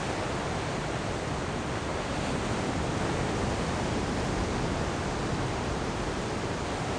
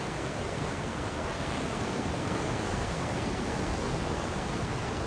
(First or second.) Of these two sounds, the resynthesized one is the second